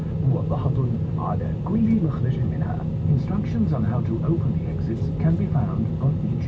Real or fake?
real